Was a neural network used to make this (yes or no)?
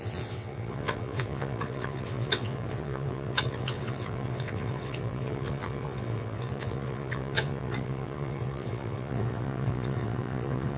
yes